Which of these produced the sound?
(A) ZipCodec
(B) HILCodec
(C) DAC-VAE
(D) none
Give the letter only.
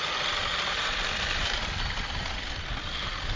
D